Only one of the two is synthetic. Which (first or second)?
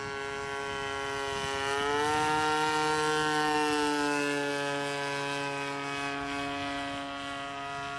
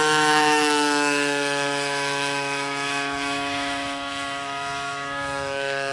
second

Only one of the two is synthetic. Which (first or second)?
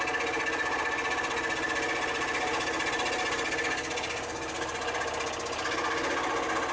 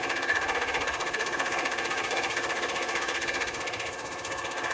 second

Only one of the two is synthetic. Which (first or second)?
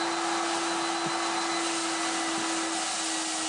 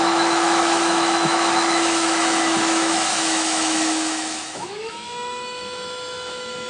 second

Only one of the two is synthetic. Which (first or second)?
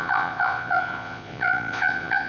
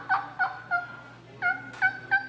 first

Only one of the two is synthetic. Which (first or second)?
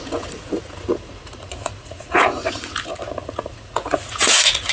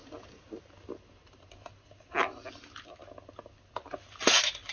first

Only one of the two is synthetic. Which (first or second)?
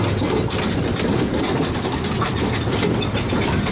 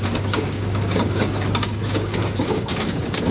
second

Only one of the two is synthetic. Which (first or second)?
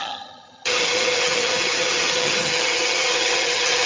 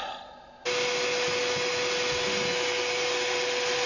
first